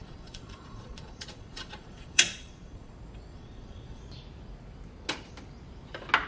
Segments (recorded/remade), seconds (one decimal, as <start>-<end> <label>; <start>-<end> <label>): 0.0-2.9 remade; 2.9-3.3 recorded; 3.3-4.0 remade; 4.0-6.3 recorded